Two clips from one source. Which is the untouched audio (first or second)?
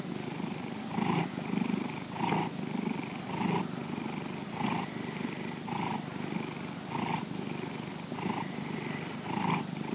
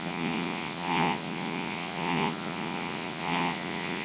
first